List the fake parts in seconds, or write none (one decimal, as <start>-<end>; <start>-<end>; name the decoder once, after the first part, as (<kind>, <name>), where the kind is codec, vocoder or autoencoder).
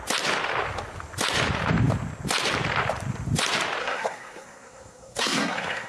3.8-5.9 (codec, SNAC)